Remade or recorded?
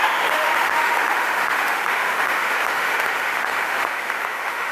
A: remade